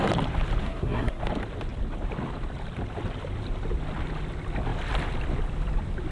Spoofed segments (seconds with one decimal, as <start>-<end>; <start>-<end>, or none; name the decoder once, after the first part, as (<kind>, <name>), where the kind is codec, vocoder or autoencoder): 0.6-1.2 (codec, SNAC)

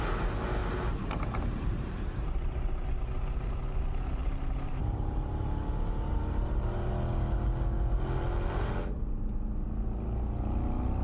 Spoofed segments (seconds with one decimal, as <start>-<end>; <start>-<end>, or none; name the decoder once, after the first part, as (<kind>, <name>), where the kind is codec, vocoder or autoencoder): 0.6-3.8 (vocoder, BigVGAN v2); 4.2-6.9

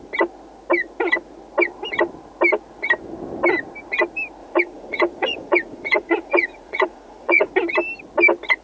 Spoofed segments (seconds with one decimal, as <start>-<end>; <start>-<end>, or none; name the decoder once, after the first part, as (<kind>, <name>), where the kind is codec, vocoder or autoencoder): 4.4-7.5 (vocoder, Vocos)

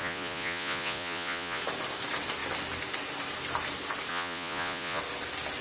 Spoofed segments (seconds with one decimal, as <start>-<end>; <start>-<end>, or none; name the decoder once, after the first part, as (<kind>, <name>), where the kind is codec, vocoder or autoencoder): 0.0-1.6 (vocoder, Vocos); 4.1-5.0

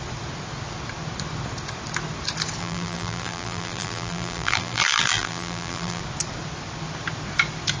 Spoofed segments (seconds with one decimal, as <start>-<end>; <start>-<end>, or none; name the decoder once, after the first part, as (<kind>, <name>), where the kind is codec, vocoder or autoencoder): 2.6-6.0 (vocoder, BigVGAN v2)